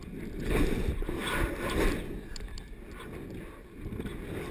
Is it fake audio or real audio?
real